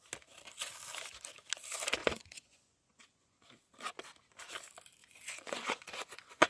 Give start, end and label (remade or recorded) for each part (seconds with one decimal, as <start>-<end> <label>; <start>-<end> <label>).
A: 0.0-2.0 recorded; 2.0-3.5 remade; 3.5-5.0 recorded; 5.0-6.5 remade